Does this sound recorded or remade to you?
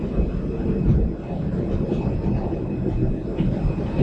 recorded